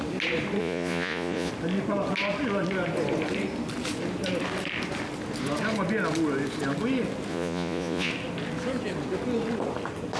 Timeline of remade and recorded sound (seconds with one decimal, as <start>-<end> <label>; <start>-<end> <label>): 0.0-0.6 recorded; 0.6-1.5 remade; 1.5-7.3 recorded; 7.3-8.1 remade; 8.1-10.2 recorded